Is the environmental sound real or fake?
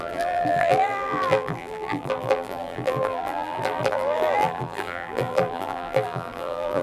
fake